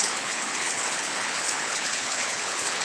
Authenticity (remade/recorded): remade